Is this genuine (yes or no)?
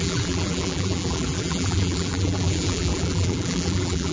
no